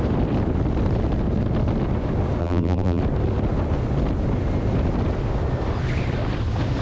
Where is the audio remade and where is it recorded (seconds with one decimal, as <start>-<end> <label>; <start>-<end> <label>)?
0.0-2.4 recorded; 2.4-3.0 remade; 3.0-6.8 recorded